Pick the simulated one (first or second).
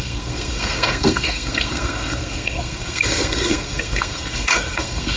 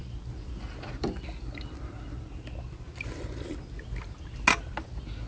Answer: first